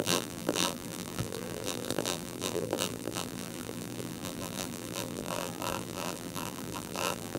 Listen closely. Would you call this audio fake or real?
fake